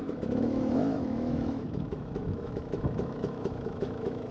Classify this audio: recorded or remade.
remade